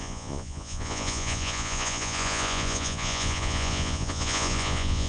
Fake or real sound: fake